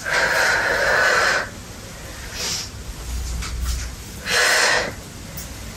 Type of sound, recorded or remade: recorded